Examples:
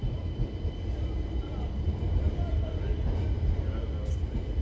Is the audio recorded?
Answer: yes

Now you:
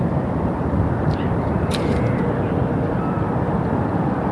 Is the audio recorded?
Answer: no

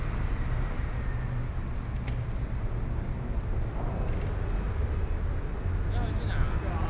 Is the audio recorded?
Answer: yes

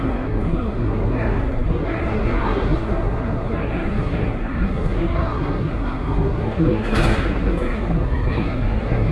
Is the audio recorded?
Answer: no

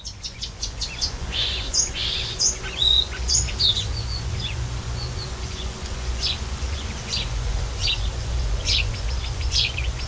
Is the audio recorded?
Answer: no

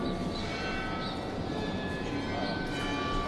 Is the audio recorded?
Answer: yes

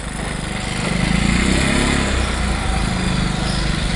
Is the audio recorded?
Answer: yes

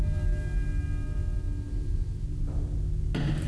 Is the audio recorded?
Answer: yes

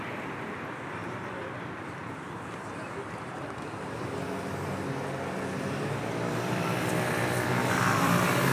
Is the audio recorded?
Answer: yes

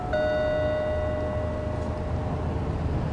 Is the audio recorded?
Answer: yes